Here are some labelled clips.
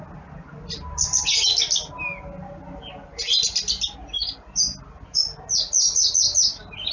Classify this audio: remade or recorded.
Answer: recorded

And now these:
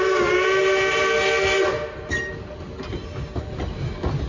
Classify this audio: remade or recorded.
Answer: recorded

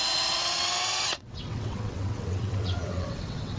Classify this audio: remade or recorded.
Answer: remade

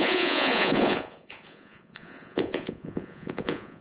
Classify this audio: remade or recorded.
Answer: remade